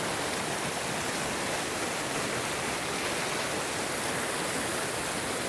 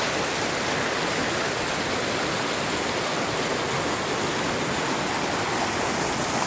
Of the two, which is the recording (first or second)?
second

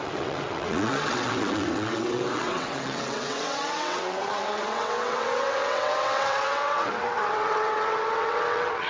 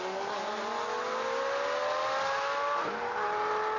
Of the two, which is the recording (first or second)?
second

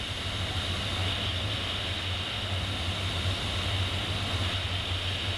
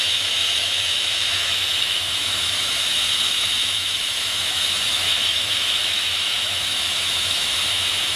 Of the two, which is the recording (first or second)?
first